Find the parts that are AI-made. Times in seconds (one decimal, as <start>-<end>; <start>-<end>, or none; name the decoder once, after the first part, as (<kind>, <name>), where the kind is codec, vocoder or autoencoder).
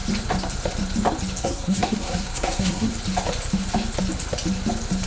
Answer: 1.4-2.9 (codec, SNAC)